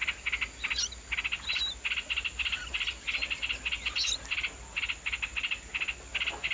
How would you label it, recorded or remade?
recorded